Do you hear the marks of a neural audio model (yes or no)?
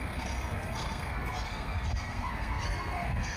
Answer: yes